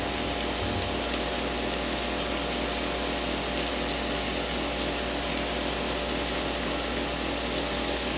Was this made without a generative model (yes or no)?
yes